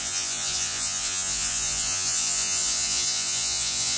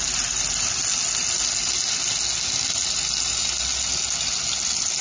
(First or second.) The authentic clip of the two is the second